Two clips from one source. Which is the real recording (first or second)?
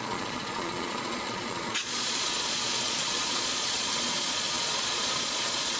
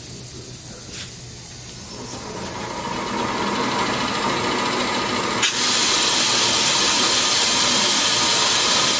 second